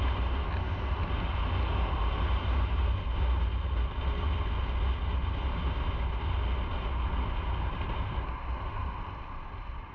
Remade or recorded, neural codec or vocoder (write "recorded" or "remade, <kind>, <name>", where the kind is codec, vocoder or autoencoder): recorded